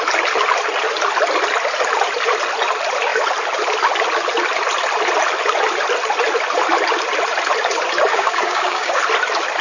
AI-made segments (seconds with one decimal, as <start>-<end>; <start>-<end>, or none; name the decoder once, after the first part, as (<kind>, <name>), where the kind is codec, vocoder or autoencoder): 8.1-9.0 (codec, DAC)